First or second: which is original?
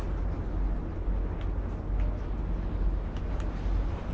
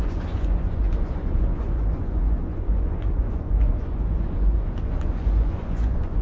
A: first